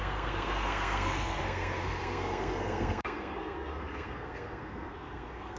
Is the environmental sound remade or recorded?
remade